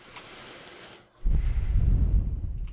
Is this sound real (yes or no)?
yes